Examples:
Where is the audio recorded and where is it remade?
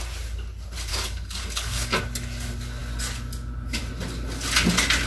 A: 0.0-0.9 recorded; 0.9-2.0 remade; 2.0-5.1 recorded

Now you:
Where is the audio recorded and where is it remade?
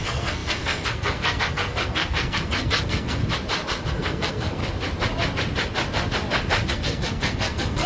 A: 0.0-3.2 remade; 3.2-3.9 recorded; 3.9-4.6 remade; 4.6-6.7 recorded; 6.7-7.9 remade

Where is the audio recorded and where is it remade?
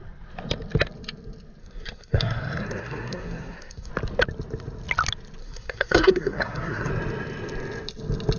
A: 0.0-1.6 recorded; 1.6-3.9 remade; 3.9-5.4 recorded; 5.4-6.9 remade; 6.9-8.4 recorded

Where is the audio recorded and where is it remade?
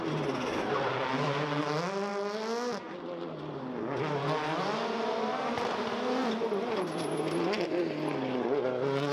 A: 0.0-9.1 recorded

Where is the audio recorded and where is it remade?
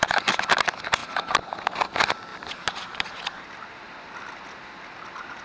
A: 0.0-2.3 recorded; 2.3-4.3 remade; 4.3-5.4 recorded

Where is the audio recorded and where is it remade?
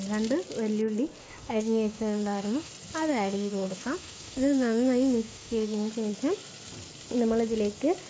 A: 0.0-1.2 recorded; 1.2-2.7 remade; 2.7-3.1 recorded; 3.1-5.9 remade; 5.9-8.1 recorded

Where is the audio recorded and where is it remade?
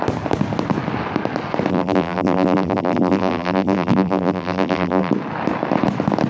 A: 0.0-1.7 recorded; 1.7-5.1 remade; 5.1-6.3 recorded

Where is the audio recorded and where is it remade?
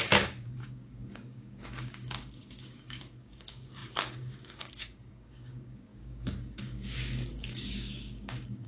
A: 0.0-8.7 remade